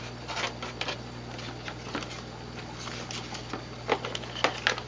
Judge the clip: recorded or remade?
recorded